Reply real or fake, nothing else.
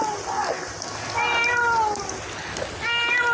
real